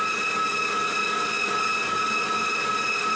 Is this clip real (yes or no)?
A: yes